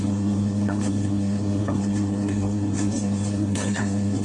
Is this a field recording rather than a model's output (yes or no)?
no